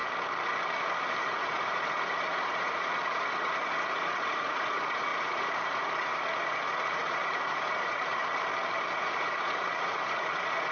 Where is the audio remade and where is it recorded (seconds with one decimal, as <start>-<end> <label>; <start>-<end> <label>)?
0.0-1.2 recorded; 1.2-8.2 remade; 8.2-9.0 recorded; 9.0-10.7 remade